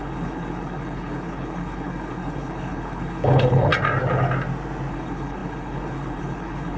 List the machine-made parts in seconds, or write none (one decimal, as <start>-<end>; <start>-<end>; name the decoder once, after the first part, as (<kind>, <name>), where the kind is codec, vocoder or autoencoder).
0.0-3.7 (codec, HILCodec); 4.9-6.8